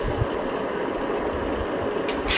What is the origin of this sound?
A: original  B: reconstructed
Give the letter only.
A